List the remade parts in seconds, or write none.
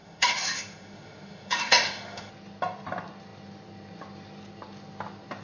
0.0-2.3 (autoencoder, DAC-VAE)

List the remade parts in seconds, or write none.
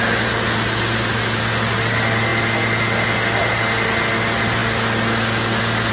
none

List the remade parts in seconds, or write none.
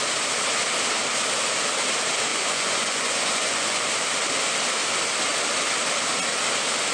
2.3-3.8 (vocoder, Vocos)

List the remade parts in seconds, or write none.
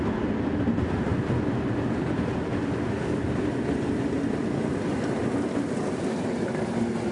none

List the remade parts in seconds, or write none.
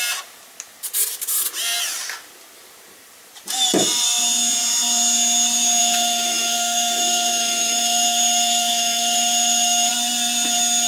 5.8-9.9 (autoencoder, DAC-VAE)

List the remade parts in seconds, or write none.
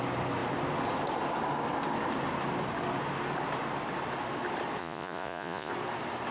4.8-5.7 (vocoder, Vocos)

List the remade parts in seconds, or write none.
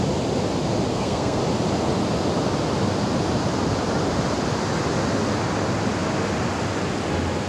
0.9-1.4 (codec, SNAC)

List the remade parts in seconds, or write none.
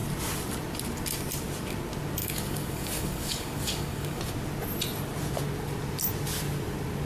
2.2-4.2 (codec, DAC)